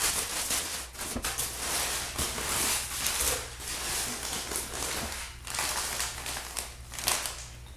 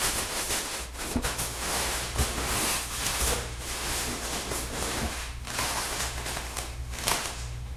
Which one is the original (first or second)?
first